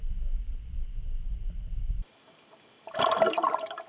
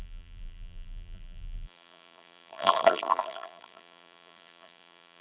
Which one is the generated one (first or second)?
second